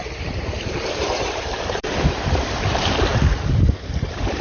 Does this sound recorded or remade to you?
remade